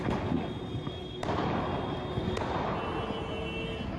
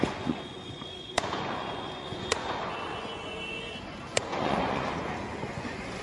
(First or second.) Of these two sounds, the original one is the first